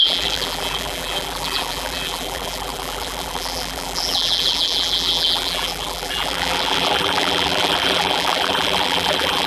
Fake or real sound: fake